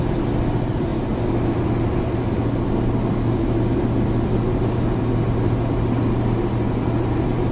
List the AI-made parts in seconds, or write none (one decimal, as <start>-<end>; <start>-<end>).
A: none